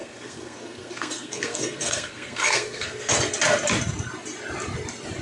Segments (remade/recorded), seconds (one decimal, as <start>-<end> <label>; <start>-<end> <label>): 0.0-3.1 remade; 3.1-5.2 recorded